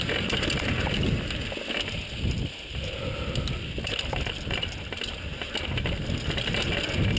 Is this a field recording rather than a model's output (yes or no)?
yes